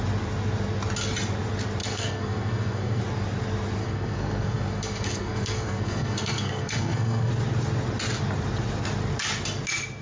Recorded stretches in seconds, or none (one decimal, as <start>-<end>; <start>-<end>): 0.0-1.8; 3.0-3.8; 7.3-10.0